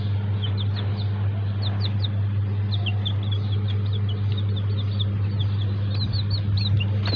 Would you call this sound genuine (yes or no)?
yes